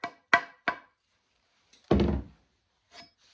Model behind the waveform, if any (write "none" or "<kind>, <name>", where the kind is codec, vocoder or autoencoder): none